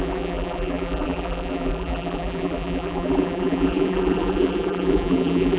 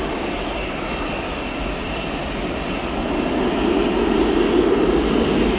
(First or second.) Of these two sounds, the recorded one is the second